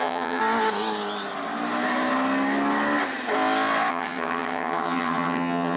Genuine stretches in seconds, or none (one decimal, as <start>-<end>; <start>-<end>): 0.4-3.9